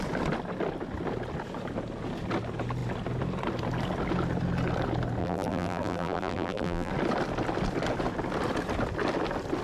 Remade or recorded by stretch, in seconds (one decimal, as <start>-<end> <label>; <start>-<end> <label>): 0.0-5.2 recorded; 5.2-6.9 remade; 6.9-9.6 recorded